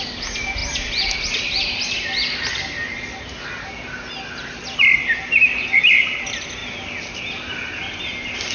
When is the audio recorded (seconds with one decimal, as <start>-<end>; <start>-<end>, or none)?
0.0-8.5